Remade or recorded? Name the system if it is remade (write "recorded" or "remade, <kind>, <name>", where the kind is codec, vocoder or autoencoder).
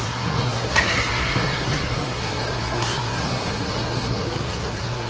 remade, codec, SNAC